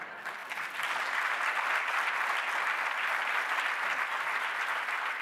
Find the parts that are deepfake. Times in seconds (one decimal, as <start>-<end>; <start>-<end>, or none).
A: 0.0-0.4; 3.5-5.2